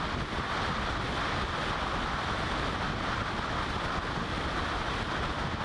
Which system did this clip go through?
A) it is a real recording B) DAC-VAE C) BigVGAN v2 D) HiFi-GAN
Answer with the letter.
A